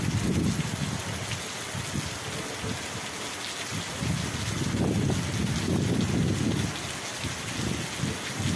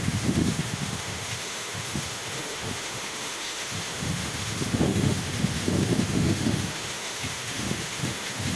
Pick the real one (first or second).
first